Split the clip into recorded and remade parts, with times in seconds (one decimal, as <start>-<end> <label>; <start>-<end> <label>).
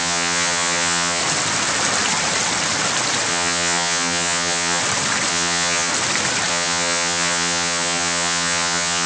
0.0-1.2 remade; 1.2-3.3 recorded; 3.3-4.8 remade; 4.8-5.3 recorded; 5.3-5.9 remade; 5.9-6.5 recorded; 6.5-9.1 remade